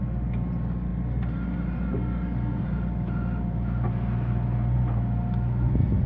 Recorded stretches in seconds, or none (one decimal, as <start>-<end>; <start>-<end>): 0.0-6.1